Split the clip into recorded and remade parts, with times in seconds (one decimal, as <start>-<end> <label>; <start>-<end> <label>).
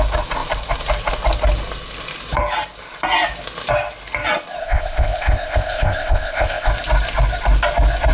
0.0-4.6 recorded; 4.6-6.7 remade; 6.7-8.1 recorded